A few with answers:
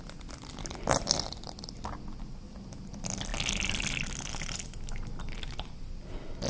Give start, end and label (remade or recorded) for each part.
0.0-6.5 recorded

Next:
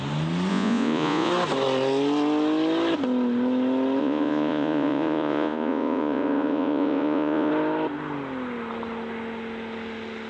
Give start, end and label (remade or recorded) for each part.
0.0-0.5 recorded; 0.5-1.3 remade; 1.3-4.0 recorded; 4.0-7.5 remade; 7.5-10.3 recorded

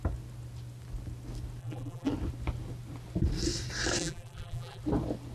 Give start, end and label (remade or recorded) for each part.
0.0-1.6 recorded; 1.6-2.1 remade; 2.1-4.0 recorded; 4.0-4.8 remade; 4.8-5.3 recorded

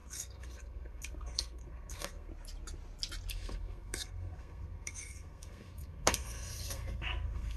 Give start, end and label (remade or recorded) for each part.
0.0-2.3 remade; 2.3-3.3 recorded; 3.3-7.6 remade

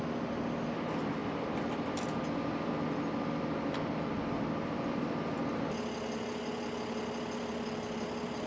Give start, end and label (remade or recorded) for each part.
0.0-1.2 recorded; 1.2-2.1 remade; 2.1-8.5 recorded

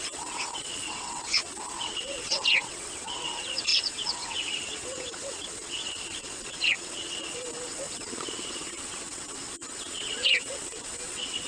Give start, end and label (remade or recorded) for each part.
0.0-11.5 remade